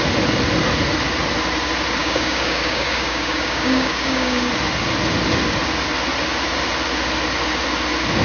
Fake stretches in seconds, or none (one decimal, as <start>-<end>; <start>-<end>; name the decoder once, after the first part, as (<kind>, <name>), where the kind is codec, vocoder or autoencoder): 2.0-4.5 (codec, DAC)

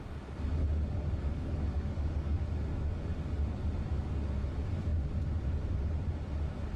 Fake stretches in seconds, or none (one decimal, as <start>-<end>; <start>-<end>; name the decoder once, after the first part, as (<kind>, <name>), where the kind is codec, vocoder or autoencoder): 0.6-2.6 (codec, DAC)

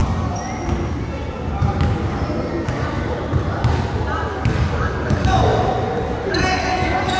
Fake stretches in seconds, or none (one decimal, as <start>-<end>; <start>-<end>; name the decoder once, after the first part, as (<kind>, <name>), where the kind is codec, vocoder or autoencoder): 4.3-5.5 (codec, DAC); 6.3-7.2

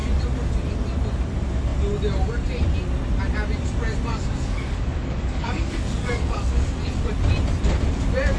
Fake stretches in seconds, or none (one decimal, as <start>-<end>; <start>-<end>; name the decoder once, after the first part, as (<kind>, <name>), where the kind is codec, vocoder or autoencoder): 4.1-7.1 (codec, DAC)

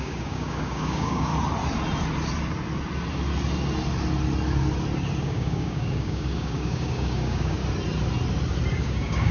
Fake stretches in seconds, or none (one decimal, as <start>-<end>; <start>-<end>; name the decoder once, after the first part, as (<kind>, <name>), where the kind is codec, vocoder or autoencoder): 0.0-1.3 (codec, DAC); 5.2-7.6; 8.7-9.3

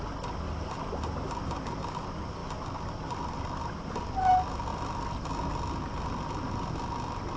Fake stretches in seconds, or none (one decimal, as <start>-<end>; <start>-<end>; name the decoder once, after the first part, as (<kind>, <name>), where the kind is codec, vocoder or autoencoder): none